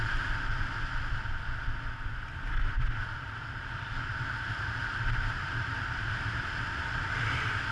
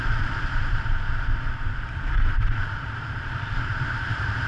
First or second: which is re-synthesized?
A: second